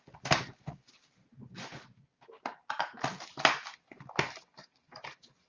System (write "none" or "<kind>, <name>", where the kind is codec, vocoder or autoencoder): none